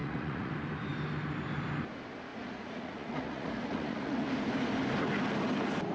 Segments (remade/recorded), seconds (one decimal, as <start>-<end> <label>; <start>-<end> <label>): 0.0-0.5 remade; 0.5-2.3 recorded; 2.3-4.3 remade; 4.3-5.9 recorded